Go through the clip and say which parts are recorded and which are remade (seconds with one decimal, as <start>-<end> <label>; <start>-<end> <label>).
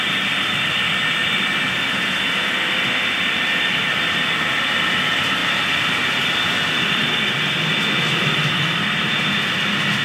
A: 0.0-10.0 recorded